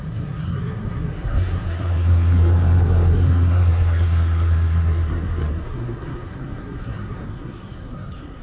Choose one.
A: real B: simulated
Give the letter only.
B